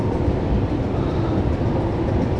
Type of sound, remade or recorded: remade